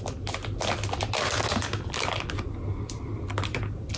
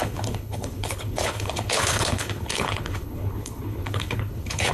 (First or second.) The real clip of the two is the first